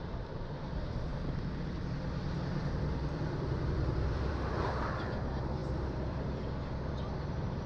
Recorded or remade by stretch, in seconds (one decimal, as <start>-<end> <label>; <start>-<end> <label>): 0.0-1.1 remade; 1.1-1.8 recorded; 1.8-7.7 remade